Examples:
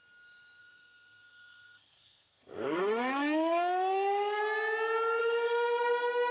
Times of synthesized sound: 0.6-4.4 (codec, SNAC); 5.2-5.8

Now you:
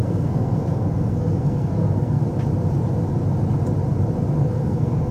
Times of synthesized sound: 0.0-2.2 (codec, SNAC); 4.4-5.1